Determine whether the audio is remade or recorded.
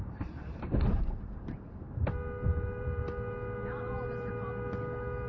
remade